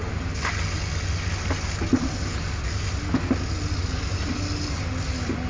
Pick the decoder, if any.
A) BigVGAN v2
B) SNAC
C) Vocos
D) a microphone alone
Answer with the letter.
D